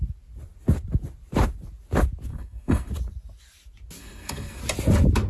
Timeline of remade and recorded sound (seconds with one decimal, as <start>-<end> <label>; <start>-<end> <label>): 0.0-2.3 recorded; 2.3-2.9 remade; 2.9-4.0 recorded; 4.0-4.6 remade; 4.6-5.3 recorded